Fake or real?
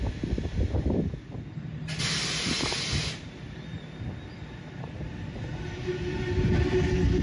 real